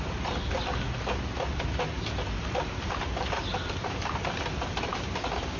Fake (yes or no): no